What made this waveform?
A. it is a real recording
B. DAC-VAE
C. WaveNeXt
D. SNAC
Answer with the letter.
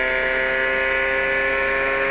A